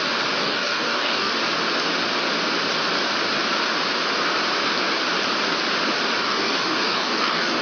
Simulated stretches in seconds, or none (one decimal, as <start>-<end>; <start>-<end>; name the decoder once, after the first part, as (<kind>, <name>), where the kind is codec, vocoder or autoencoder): 0.4-1.3 (codec, DAC); 6.2-7.6